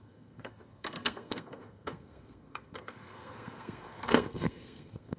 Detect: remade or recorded remade